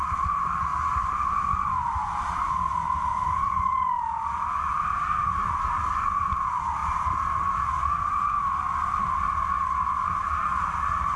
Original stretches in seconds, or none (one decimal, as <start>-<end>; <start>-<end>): 0.0-11.2